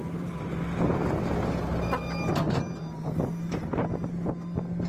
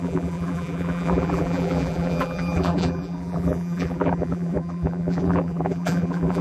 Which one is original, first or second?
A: first